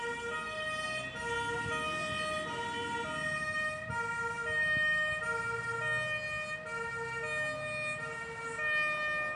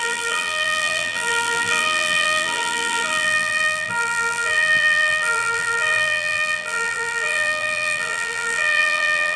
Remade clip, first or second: second